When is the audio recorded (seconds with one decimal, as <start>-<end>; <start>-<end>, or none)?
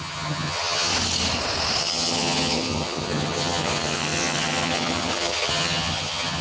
0.9-1.8